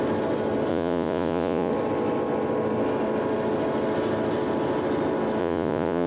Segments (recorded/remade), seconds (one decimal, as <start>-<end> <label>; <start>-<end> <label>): 0.0-0.7 recorded; 0.7-1.7 remade; 1.7-5.4 recorded; 5.4-6.1 remade